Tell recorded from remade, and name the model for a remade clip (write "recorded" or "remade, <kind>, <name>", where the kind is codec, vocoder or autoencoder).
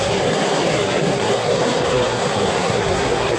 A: remade, codec, SNAC